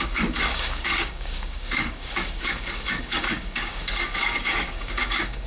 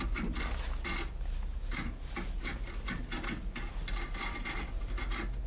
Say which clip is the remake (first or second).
first